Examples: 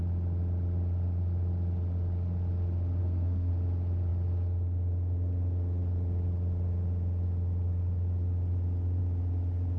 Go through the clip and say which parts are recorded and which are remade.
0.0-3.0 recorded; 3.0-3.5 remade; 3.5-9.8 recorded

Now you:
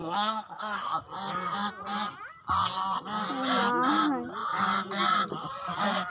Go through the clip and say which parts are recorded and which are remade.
0.0-1.0 remade; 1.0-6.1 recorded